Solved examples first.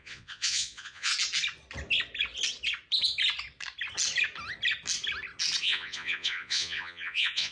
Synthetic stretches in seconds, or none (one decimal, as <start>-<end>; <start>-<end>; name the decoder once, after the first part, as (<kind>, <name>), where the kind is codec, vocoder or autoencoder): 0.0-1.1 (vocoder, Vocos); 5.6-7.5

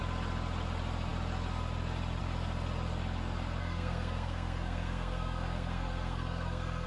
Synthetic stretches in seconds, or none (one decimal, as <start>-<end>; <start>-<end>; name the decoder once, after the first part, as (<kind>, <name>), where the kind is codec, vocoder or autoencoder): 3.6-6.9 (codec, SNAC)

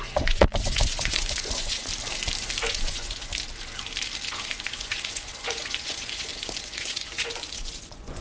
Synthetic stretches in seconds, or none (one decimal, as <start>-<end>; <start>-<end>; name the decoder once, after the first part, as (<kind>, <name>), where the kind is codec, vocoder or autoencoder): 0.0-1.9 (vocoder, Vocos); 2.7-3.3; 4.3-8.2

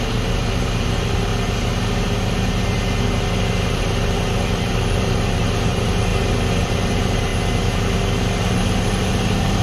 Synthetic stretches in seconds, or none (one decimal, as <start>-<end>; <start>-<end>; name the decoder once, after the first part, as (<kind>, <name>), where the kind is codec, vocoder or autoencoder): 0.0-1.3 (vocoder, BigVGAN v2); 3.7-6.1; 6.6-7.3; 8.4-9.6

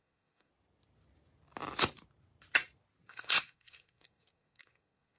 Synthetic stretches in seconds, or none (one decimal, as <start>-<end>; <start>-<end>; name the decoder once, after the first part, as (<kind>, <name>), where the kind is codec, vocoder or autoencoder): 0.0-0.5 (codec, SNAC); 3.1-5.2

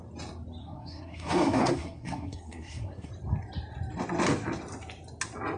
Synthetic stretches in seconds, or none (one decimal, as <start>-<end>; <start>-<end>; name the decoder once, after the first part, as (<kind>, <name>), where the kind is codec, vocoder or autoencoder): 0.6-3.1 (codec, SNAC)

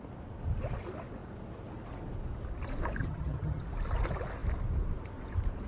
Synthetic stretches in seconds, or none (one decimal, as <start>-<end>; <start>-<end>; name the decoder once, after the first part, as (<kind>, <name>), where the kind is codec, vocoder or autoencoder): 3.0-3.6 (vocoder, HiFi-GAN)